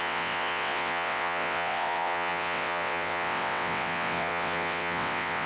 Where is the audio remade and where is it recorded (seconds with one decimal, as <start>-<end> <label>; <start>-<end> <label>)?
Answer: 0.0-5.5 remade